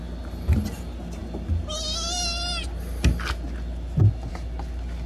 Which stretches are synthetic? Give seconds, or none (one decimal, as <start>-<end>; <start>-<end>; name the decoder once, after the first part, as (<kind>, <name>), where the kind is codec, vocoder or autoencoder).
none